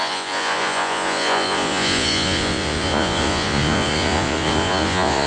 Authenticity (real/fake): fake